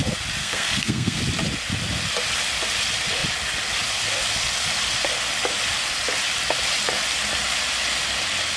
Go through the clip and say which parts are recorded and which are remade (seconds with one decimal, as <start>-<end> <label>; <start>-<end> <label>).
0.0-0.4 recorded; 0.4-1.2 remade; 1.2-8.6 recorded